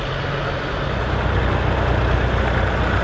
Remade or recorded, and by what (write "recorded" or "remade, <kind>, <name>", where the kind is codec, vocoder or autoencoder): recorded